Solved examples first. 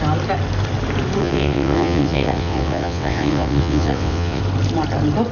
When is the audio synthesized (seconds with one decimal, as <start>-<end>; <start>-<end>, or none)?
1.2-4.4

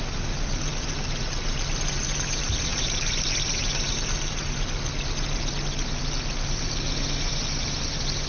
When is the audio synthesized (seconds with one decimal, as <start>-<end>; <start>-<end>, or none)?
none

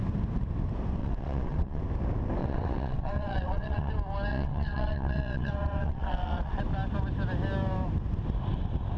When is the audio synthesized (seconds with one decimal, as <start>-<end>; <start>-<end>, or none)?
1.0-1.8; 2.4-3.9; 4.3-6.6

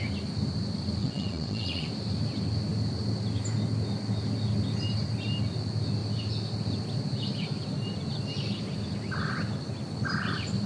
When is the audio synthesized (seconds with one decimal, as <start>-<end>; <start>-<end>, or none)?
1.0-1.9

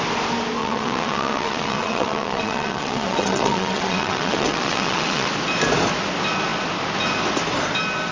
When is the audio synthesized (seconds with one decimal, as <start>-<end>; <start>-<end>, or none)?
0.6-5.3

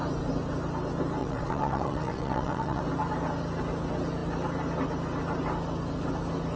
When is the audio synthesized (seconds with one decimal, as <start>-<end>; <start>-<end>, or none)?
1.2-2.8

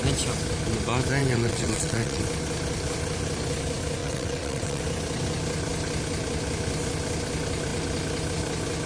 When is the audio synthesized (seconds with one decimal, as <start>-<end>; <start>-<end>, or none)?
1.2-2.2; 4.0-4.8